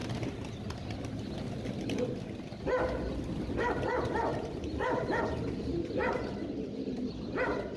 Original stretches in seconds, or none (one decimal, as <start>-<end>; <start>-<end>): 0.0-3.2; 3.9-4.5; 6.0-7.8